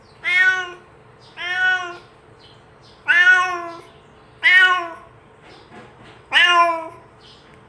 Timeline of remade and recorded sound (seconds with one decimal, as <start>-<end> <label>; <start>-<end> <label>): 0.0-7.7 recorded